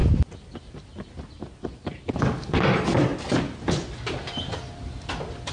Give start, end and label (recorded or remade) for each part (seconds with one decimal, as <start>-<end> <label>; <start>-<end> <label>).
0.0-5.5 recorded